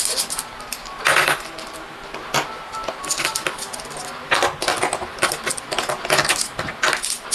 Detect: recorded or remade recorded